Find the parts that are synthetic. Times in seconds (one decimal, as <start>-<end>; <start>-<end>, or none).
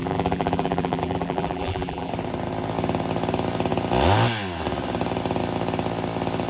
0.0-2.1